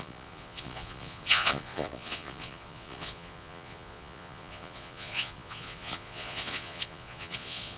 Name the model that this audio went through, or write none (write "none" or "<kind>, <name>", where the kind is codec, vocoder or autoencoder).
vocoder, Vocos